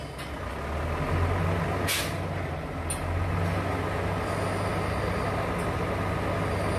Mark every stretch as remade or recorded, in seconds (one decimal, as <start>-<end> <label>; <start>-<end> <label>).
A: 0.0-6.8 recorded